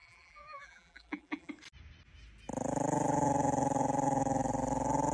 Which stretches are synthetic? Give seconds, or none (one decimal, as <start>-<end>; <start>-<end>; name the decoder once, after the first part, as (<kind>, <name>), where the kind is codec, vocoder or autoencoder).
0.0-1.5 (vocoder, BigVGAN v2)